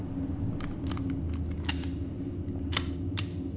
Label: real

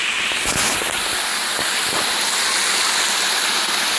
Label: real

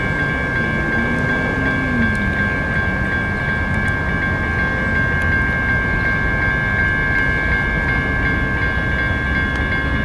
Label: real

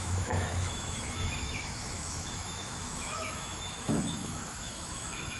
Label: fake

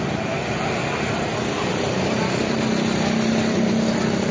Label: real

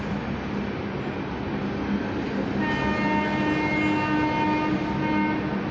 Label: real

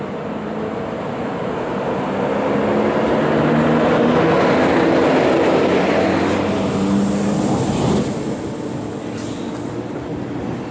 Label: real